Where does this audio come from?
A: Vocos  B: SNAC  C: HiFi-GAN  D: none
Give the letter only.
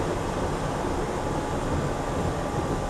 D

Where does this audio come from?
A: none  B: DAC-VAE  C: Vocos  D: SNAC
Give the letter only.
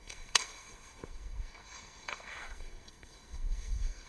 D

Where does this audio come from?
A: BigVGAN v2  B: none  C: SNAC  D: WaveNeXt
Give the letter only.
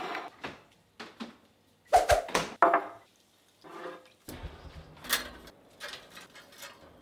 B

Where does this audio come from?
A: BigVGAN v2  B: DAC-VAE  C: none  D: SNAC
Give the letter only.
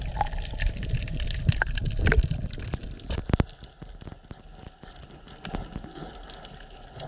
C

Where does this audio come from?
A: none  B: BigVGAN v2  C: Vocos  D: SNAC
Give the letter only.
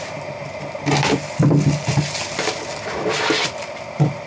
A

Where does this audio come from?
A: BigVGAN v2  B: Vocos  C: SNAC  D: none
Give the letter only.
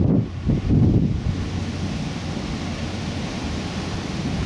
D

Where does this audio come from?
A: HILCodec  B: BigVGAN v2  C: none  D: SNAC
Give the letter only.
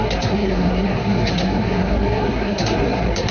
D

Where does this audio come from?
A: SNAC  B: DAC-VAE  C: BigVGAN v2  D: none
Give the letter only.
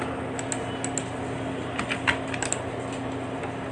D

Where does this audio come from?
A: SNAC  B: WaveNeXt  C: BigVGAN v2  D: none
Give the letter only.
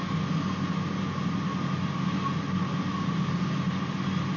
D